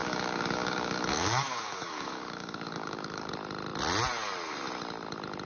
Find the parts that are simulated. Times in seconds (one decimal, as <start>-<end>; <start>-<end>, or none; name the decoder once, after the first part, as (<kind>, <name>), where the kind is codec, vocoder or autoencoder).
0.0-3.3 (codec, DAC)